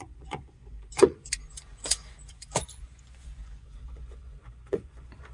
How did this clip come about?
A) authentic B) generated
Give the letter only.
B